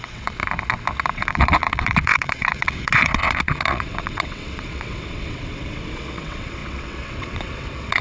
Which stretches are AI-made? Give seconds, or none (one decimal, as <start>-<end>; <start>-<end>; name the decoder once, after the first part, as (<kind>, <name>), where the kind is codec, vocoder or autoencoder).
0.0-0.4 (vocoder, WaveNeXt); 1.1-8.0